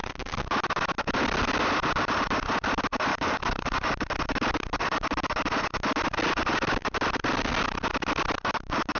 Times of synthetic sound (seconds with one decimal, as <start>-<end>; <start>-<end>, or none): 3.1-3.7